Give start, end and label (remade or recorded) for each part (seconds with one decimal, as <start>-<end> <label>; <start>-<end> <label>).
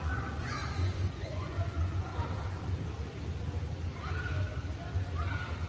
0.0-2.1 remade; 2.1-5.7 recorded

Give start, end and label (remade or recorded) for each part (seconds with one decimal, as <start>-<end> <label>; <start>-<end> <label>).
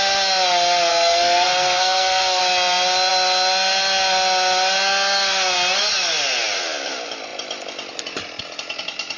0.0-0.9 recorded; 0.9-2.4 remade; 2.4-9.2 recorded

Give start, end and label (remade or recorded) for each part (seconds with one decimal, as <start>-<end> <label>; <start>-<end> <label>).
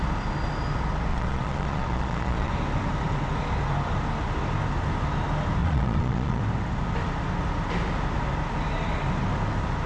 0.0-1.1 recorded; 1.1-2.5 remade; 2.5-5.6 recorded; 5.6-6.4 remade; 6.4-9.9 recorded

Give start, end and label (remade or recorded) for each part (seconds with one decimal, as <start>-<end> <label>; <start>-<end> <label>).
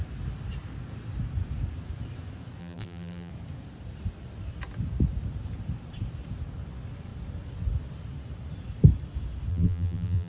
0.0-2.6 recorded; 2.6-3.3 remade; 3.3-9.5 recorded; 9.5-10.3 remade